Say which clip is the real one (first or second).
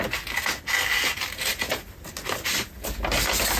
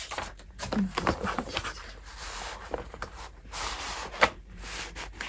first